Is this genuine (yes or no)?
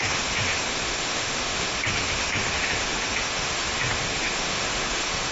no